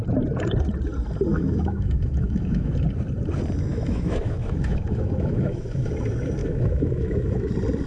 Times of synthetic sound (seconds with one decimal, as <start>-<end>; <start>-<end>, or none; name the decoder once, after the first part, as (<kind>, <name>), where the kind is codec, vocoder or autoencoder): 1.3-2.7 (autoencoder, DAC-VAE); 3.7-5.9; 6.4-7.5